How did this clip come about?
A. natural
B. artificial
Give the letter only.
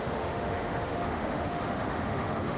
B